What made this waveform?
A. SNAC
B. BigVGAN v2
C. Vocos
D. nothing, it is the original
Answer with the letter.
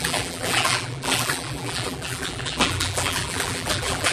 B